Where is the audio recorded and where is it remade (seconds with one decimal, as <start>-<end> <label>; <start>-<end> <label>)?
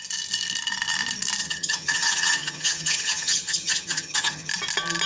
0.0-1.4 recorded; 1.4-4.5 remade; 4.5-5.1 recorded